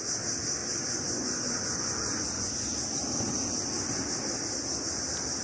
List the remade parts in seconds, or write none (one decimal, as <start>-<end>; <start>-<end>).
0.6-2.5